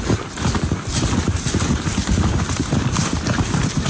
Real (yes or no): yes